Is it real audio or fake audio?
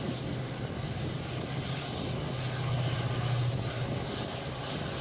real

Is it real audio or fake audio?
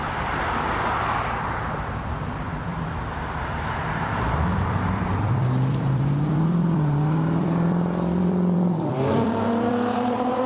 fake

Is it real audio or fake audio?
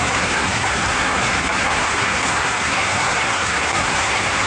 fake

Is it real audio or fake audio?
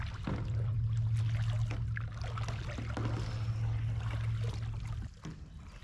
real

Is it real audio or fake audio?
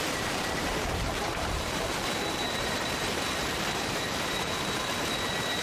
fake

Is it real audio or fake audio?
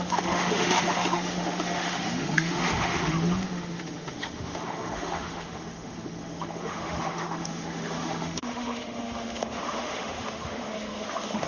fake